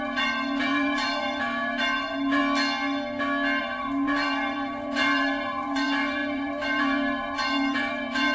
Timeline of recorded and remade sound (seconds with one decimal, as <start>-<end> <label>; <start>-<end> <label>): 0.0-2.4 remade; 2.4-3.6 recorded; 3.6-8.3 remade